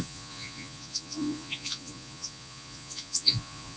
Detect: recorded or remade remade